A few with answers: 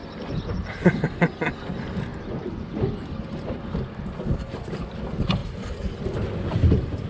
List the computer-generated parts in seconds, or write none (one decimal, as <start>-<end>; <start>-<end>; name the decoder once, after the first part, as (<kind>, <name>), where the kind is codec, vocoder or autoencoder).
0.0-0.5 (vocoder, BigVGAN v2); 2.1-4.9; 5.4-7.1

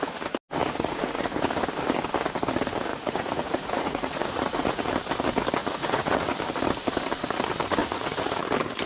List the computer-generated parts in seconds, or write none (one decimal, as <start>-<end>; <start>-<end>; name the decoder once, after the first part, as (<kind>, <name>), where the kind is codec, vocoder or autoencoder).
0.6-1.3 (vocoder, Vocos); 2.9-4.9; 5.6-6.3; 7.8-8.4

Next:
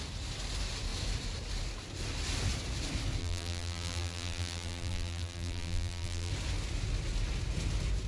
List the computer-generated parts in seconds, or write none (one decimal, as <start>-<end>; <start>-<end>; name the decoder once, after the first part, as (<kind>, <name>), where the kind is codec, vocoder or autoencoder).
3.2-6.3 (vocoder, BigVGAN v2)

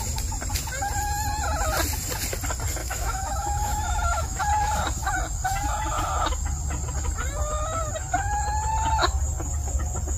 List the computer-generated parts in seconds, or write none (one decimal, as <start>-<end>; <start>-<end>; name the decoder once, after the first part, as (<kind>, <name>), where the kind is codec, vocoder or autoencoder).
2.8-4.4 (autoencoder, DAC-VAE)

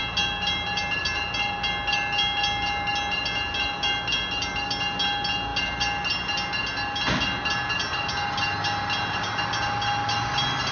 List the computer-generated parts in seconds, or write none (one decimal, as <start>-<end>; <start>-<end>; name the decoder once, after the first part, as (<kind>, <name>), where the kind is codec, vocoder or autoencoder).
none

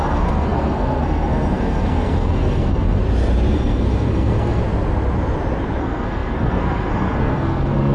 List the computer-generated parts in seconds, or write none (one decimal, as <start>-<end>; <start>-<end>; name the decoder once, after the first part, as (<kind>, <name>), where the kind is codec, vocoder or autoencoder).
0.0-3.0 (codec, SNAC); 3.5-4.6; 5.8-7.9